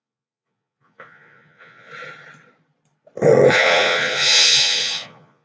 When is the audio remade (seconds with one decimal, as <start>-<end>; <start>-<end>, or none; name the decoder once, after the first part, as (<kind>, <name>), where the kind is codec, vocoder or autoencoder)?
0.0-1.9 (vocoder, Vocos); 3.5-5.4

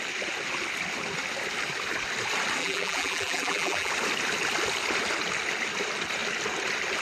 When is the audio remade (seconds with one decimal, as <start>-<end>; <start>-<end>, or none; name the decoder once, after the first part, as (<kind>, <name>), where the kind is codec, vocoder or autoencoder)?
2.6-3.9 (vocoder, BigVGAN v2)

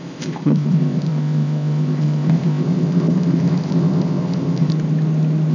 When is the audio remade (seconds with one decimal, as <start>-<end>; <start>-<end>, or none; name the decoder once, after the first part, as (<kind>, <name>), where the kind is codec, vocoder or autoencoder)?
0.0-4.7 (codec, ZipCodec)

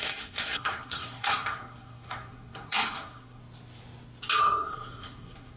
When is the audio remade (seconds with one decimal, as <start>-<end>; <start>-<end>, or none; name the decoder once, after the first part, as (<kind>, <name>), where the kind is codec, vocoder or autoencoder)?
0.0-3.4 (codec, SNAC); 4.4-5.6

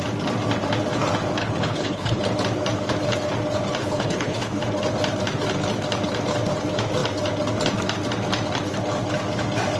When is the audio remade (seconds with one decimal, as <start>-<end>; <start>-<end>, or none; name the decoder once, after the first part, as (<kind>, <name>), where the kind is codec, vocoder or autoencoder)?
1.4-2.2 (codec, HILCodec); 3.8-4.6

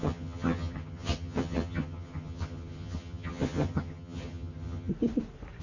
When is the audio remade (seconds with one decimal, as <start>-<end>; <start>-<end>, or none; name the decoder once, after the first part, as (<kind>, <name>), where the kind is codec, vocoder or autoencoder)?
0.0-4.9 (vocoder, HiFi-GAN)